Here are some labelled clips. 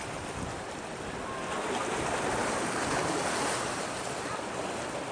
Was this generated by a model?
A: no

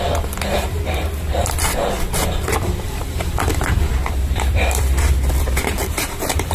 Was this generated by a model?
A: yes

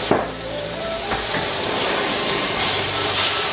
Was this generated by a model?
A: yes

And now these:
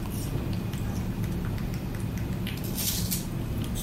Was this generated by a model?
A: no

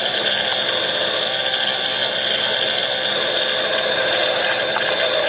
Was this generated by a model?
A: no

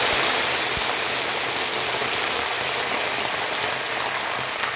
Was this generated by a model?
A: no